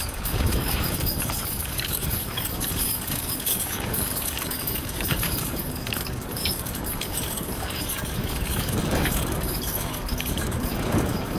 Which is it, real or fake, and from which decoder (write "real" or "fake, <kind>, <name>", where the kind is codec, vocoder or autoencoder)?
fake, codec, DAC